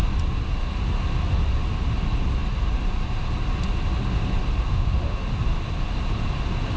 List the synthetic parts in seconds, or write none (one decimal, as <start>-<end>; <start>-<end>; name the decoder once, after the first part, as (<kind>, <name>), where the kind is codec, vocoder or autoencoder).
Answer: 4.7-5.2 (autoencoder, DAC-VAE)